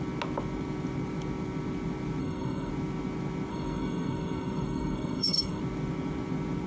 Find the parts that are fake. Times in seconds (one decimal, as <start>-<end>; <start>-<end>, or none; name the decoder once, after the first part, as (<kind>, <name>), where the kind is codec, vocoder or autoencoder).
2.2-2.7 (codec, SNAC); 3.5-5.6